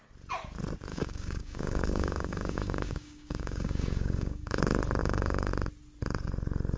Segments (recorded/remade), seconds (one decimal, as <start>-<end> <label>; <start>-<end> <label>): 0.0-0.9 recorded; 0.9-4.6 remade; 4.6-5.0 recorded; 5.0-5.5 remade; 5.5-6.8 recorded